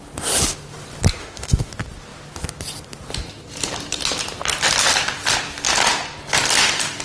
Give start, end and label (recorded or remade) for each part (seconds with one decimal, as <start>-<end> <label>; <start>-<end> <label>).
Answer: 0.0-1.2 recorded; 1.2-1.7 remade; 1.7-7.0 recorded